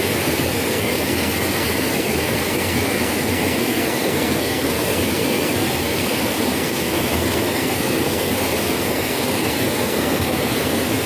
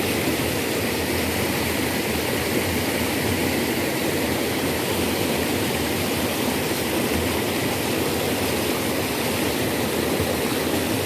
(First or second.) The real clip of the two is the second